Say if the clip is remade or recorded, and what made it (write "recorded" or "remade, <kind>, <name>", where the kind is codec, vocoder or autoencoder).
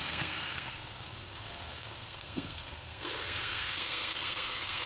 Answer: remade, codec, SNAC